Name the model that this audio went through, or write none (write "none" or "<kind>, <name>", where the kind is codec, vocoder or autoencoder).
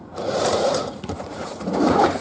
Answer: vocoder, Vocos